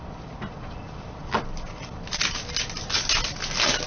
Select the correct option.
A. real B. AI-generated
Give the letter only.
A